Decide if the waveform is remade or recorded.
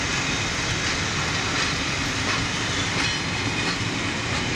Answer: recorded